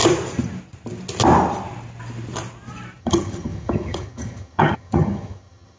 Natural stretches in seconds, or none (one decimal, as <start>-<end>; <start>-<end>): 0.0-3.0